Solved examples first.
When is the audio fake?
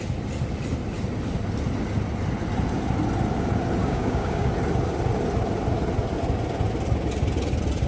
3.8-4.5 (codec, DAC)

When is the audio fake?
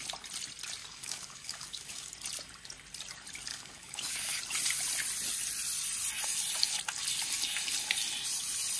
0.8-2.1 (codec, DAC); 3.5-4.4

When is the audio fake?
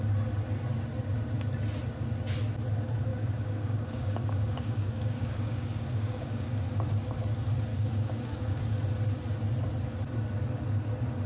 3.1-6.6 (codec, DAC); 7.7-8.6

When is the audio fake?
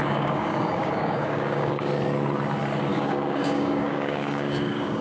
0.0-1.9 (codec, DAC); 2.9-5.0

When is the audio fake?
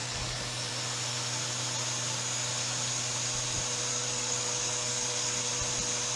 0.0-0.7 (codec, DAC); 3.9-5.5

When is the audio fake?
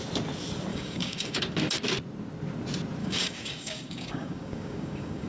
0.7-1.4 (codec, DAC); 3.0-5.3